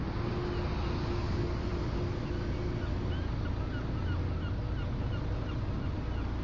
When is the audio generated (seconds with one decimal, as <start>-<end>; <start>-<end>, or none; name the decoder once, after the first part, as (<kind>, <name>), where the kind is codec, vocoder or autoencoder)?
none